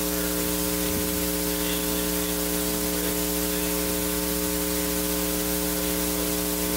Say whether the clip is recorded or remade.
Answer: recorded